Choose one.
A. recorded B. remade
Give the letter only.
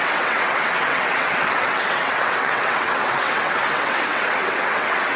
B